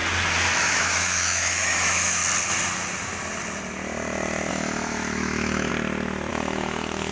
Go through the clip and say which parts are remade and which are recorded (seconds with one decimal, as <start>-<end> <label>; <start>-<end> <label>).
0.0-0.6 recorded; 0.6-2.2 remade; 2.2-4.5 recorded; 4.5-5.7 remade; 5.7-6.3 recorded; 6.3-7.1 remade